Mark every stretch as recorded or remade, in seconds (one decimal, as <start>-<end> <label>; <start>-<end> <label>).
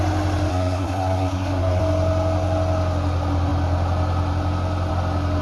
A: 0.0-0.5 recorded; 0.5-1.8 remade; 1.8-5.4 recorded